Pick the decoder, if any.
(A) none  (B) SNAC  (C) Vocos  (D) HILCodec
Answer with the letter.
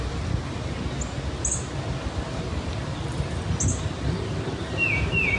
A